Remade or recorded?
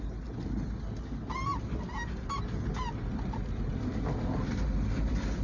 recorded